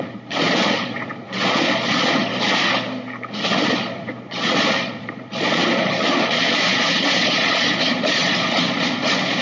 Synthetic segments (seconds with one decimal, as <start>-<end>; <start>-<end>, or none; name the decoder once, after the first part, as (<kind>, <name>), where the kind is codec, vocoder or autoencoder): 0.0-2.3 (vocoder, Vocos); 3.6-9.4